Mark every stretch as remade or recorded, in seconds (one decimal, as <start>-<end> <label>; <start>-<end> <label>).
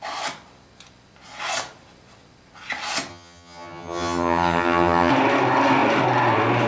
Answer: 0.0-3.1 recorded; 3.1-5.1 remade; 5.1-6.7 recorded